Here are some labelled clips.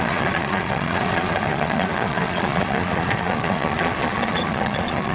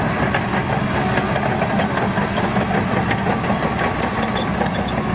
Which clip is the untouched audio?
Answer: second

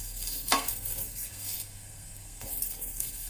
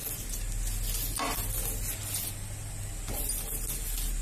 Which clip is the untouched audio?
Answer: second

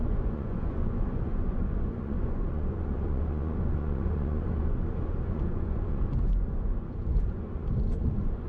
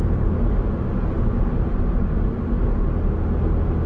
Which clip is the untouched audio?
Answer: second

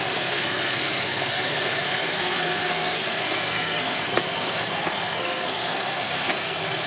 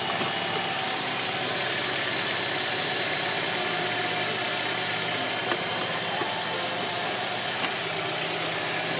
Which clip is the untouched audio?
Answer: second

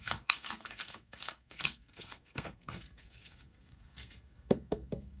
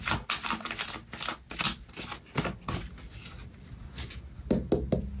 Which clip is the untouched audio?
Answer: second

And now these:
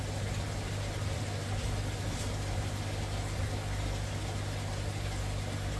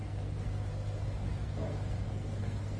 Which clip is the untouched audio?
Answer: first